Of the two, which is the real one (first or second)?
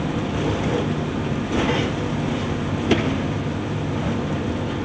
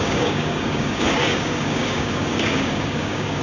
first